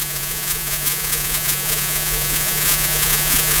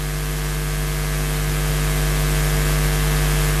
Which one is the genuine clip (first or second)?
second